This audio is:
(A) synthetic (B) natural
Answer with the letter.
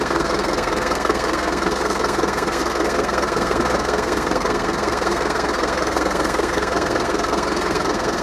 A